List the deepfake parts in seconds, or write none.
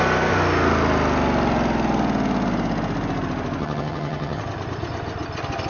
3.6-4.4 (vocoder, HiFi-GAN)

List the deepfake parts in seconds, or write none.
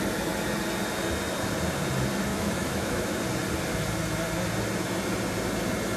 2.3-3.2 (autoencoder, DAC-VAE)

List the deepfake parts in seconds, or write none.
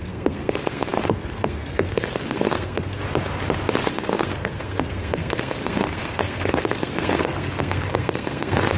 0.0-3.0 (codec, SNAC); 3.9-8.8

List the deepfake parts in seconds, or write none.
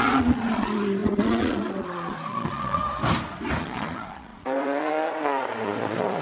0.0-2.8 (vocoder, Vocos); 3.6-6.2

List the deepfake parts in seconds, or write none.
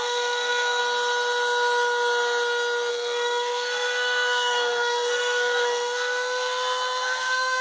0.0-0.8 (codec, SNAC); 2.9-7.6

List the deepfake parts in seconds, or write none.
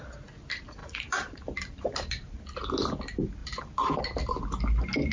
0.8-2.4 (vocoder, BigVGAN v2); 3.4-4.0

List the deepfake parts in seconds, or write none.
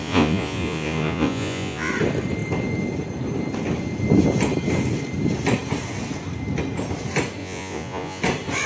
0.0-1.9 (vocoder, Vocos); 7.4-8.2